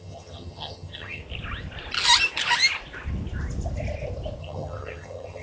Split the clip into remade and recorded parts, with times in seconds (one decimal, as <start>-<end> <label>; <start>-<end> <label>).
0.0-1.2 remade; 1.2-4.4 recorded; 4.4-5.4 remade